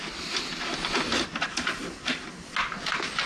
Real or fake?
real